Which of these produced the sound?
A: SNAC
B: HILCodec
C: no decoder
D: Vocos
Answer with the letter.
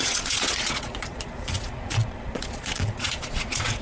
D